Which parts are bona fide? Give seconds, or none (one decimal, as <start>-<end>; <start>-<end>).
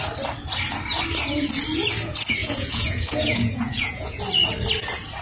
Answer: 0.0-2.4; 4.2-5.2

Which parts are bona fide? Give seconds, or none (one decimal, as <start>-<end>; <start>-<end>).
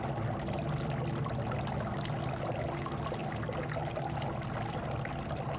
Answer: 0.0-5.6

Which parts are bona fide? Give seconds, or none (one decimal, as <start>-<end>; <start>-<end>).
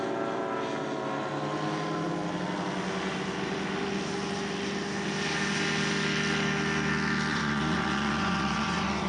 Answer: 0.0-7.3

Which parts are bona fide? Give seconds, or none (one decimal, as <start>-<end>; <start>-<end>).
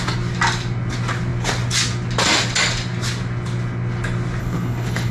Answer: 0.0-4.4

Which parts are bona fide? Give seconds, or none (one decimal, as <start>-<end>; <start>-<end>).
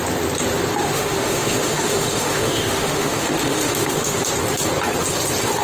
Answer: 0.0-0.8; 4.2-5.6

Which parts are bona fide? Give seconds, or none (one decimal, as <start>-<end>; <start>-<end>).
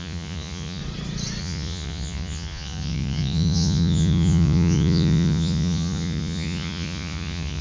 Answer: 0.8-1.4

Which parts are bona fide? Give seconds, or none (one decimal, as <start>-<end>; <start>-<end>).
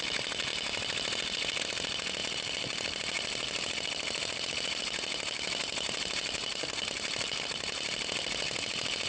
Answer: 0.0-0.5; 1.6-2.2; 7.4-9.1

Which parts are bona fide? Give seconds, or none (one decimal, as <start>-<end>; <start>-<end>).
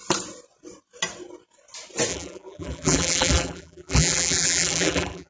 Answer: 0.0-2.1